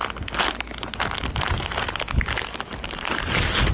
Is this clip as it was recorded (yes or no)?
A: yes